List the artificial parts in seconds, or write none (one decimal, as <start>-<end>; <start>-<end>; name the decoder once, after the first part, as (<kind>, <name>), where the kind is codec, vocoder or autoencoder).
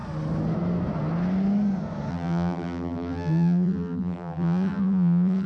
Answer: 2.1-5.5 (vocoder, BigVGAN v2)